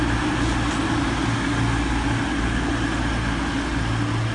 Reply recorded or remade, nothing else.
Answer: recorded